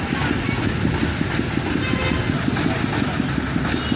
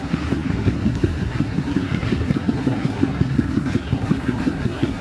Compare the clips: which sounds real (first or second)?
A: first